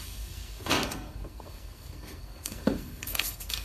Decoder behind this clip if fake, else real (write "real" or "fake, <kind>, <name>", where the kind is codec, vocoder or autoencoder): fake, codec, SNAC